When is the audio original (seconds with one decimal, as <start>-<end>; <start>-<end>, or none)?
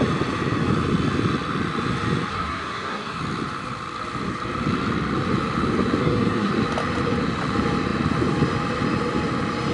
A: 0.0-2.3; 3.2-6.0; 6.5-9.7